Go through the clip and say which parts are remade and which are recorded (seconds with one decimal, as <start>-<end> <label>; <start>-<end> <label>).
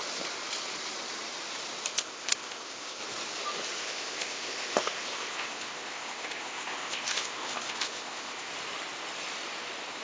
0.0-1.9 recorded; 1.9-3.0 remade; 3.0-3.8 recorded; 3.8-8.5 remade; 8.5-10.0 recorded